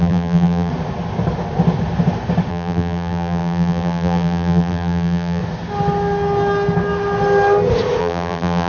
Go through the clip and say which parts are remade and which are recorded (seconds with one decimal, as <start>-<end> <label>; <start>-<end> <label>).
0.0-0.7 remade; 0.7-2.5 recorded; 2.5-5.4 remade; 5.4-8.0 recorded; 8.0-8.7 remade